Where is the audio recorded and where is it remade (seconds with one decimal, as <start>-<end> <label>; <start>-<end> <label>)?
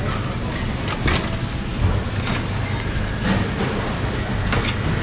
0.0-5.0 recorded